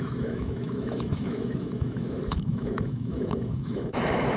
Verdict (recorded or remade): remade